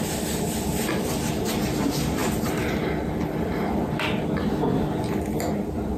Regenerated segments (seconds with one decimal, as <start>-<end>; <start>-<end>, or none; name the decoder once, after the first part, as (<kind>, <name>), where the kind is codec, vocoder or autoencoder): none